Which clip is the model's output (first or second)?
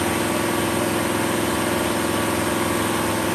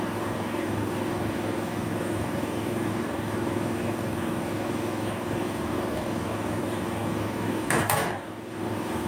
second